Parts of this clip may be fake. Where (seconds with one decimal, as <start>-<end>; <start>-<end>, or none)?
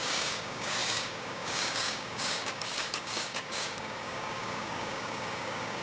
0.0-5.8